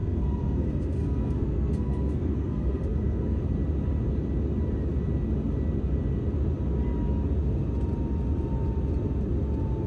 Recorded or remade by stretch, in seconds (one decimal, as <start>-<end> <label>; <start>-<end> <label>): 0.0-3.4 remade; 3.4-9.9 recorded